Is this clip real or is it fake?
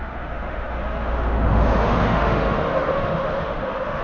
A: fake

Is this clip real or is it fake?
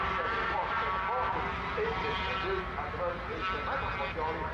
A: real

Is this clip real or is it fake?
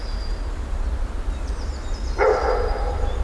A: real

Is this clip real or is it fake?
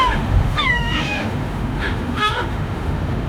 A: fake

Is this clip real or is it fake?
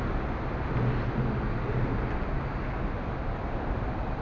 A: real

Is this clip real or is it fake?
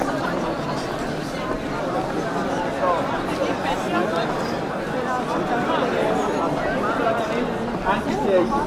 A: real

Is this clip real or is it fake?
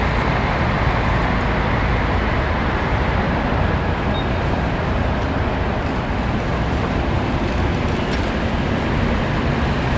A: real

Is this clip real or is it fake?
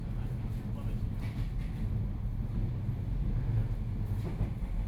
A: real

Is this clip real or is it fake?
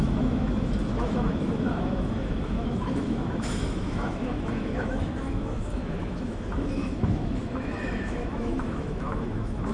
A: fake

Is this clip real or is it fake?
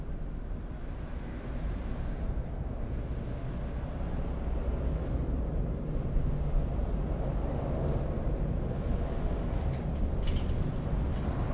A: real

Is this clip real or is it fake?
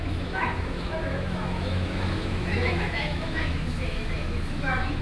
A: fake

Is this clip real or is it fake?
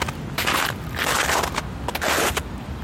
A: real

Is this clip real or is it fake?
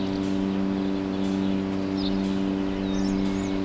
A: real